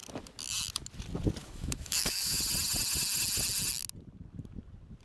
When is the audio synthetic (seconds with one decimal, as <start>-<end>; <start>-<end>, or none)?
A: 1.4-2.4